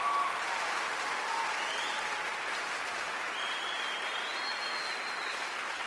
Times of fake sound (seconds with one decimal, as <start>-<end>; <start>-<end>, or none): none